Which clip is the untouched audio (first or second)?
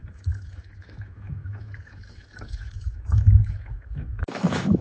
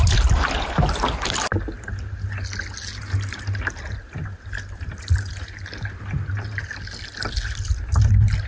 second